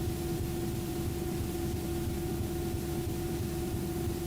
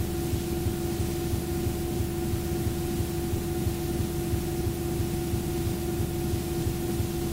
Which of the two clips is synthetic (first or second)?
first